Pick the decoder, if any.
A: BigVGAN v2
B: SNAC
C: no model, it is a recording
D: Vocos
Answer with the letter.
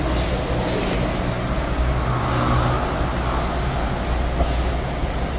C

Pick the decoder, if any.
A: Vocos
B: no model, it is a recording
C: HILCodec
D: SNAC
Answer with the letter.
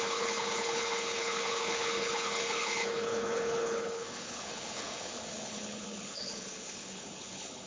C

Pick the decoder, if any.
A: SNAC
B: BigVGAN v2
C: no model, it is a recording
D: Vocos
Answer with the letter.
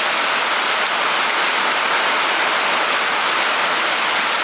C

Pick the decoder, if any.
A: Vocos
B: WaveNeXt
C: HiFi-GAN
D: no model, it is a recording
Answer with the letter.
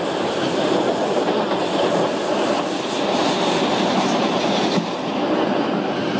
D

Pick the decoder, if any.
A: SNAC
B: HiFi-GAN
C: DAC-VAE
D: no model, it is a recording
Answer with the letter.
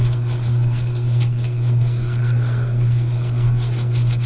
A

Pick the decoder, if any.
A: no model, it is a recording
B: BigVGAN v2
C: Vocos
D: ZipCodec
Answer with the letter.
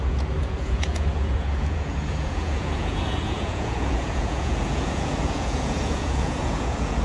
C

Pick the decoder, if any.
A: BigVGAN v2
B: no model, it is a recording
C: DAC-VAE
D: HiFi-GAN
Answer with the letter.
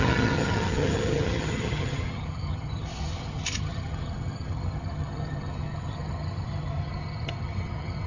D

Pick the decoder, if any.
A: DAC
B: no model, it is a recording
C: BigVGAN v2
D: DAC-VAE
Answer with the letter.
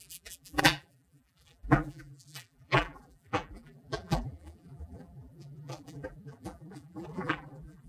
C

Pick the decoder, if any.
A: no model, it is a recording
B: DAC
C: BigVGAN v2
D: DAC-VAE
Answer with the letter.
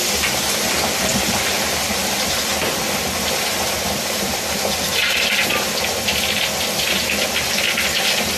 A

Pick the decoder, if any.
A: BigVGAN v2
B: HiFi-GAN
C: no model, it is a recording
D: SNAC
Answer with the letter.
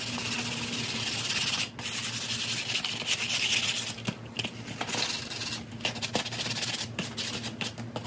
C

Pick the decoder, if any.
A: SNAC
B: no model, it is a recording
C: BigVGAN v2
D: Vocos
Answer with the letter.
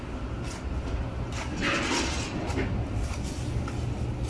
B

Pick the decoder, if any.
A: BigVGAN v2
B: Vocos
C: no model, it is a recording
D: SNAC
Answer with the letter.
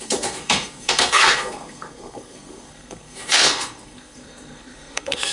D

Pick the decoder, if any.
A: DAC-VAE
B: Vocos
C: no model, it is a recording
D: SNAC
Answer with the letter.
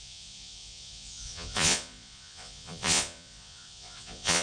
B